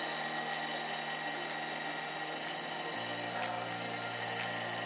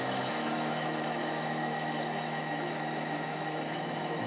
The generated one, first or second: second